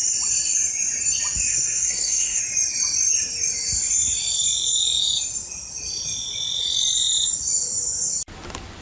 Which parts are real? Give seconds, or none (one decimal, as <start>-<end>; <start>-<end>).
0.0-1.5; 2.4-8.8